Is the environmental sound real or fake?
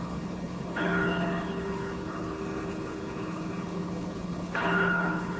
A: fake